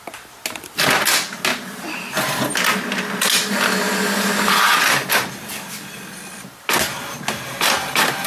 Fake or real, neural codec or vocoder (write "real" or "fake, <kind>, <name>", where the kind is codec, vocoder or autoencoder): real